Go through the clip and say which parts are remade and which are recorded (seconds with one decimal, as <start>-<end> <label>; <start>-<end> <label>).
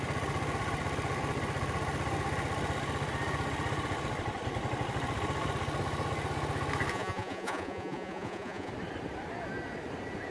0.0-6.9 recorded; 6.9-8.7 remade; 8.7-10.3 recorded